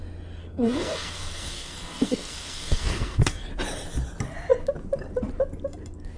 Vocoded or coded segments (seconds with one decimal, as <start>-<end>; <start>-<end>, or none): 0.4-3.5